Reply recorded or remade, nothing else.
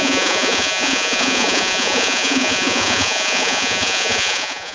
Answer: remade